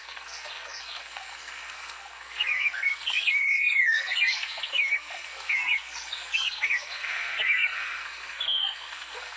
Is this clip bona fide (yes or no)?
no